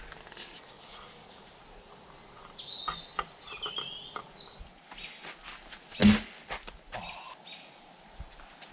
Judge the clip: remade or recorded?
recorded